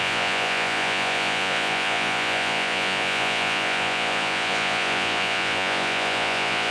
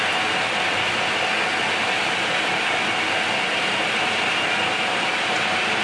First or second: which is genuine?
second